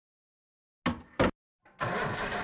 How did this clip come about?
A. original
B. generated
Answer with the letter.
A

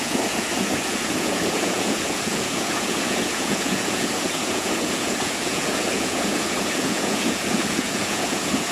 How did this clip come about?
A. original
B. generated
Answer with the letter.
B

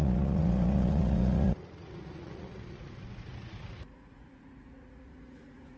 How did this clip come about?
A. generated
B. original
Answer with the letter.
A